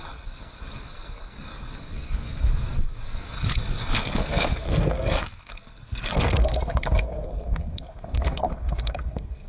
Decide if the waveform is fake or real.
fake